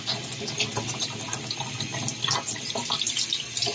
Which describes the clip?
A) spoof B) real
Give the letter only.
B